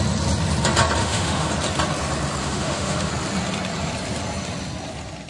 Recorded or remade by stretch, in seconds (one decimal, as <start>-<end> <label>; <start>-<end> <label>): 0.0-1.0 recorded; 1.0-1.5 remade; 1.5-2.4 recorded; 2.4-3.1 remade; 3.1-5.3 recorded